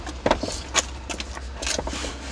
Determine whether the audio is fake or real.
real